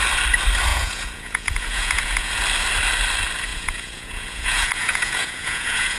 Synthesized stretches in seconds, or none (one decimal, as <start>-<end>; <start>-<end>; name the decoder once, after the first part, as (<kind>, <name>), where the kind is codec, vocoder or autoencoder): 0.7-2.4 (vocoder, Vocos); 3.5-6.0